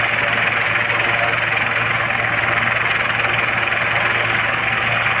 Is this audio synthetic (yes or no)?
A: no